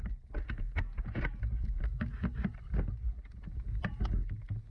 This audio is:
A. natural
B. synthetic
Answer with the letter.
A